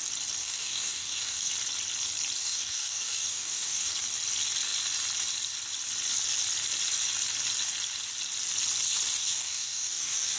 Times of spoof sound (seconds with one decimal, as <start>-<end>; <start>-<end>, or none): 0.4-1.5; 2.4-3.9; 9.2-10.4

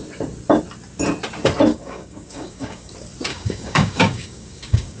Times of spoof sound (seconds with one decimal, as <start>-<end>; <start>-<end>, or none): 1.7-2.9; 3.3-5.0

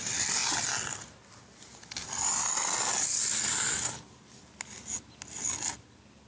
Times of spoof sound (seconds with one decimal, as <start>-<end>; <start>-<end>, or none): none

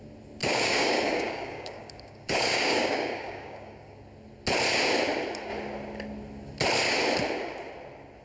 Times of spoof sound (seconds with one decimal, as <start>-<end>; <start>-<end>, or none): 0.4-4.0

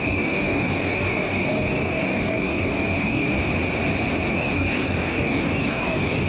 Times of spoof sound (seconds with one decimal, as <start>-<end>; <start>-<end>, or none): 0.0-3.4; 4.3-6.3

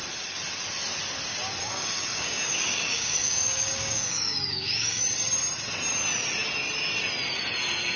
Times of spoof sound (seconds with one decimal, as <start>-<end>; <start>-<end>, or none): 1.6-5.0

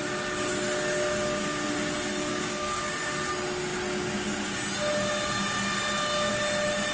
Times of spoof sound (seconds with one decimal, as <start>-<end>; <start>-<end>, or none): 2.3-2.8